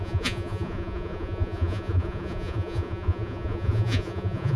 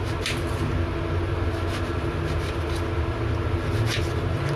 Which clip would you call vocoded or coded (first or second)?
first